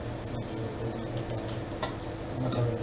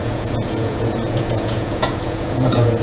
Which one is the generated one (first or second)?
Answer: second